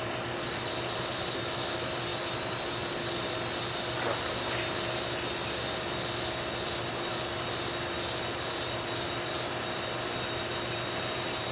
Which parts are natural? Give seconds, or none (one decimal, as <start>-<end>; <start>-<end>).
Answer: 0.0-11.5